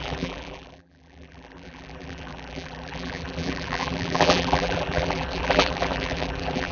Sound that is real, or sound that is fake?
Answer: fake